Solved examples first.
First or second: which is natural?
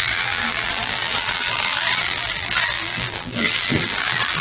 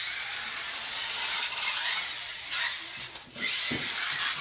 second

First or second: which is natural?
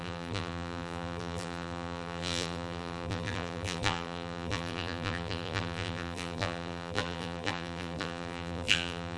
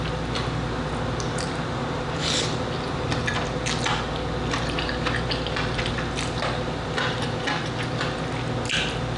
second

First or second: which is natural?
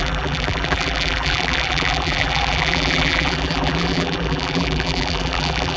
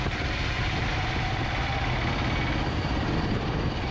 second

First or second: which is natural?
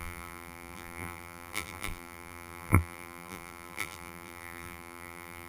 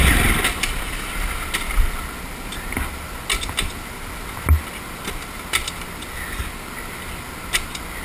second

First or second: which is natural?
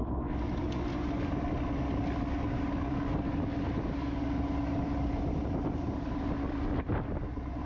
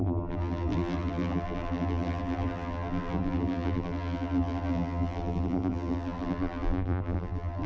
first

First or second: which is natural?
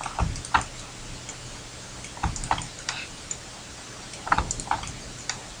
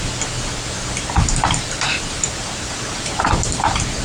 first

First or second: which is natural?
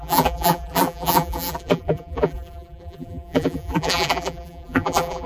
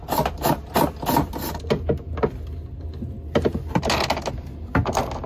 second